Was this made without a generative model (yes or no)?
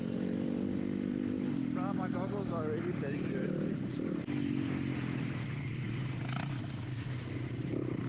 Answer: yes